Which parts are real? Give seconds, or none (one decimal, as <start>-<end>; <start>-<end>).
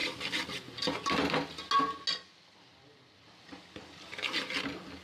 0.0-5.0